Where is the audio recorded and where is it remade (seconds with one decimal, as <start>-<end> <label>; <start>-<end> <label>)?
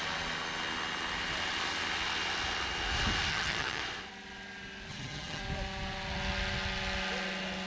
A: 0.0-3.3 recorded; 3.3-3.8 remade; 3.8-4.9 recorded; 4.9-5.4 remade; 5.4-7.7 recorded